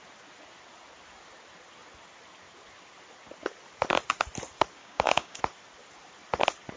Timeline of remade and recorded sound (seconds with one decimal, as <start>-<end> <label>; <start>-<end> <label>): 0.0-4.8 recorded; 4.8-5.4 remade; 5.4-6.8 recorded